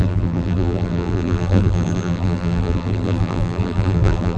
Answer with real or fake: fake